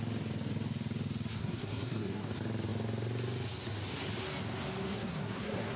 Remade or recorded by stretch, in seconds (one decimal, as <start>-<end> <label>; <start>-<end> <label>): 0.0-1.4 recorded; 1.4-2.3 remade; 2.3-4.9 recorded; 4.9-5.8 remade